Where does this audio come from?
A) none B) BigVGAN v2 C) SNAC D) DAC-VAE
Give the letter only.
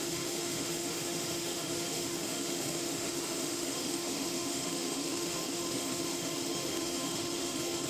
D